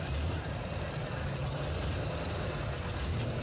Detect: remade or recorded recorded